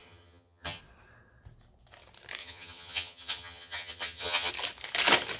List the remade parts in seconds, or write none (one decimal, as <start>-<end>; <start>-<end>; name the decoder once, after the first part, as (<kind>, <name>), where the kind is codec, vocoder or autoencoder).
0.0-0.8 (vocoder, HiFi-GAN); 2.4-4.5